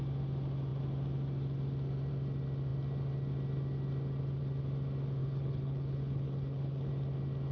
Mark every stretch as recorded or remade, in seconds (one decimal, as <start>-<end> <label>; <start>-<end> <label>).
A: 0.0-5.2 recorded; 5.2-6.9 remade; 6.9-7.5 recorded